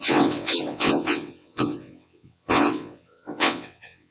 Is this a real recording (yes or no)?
no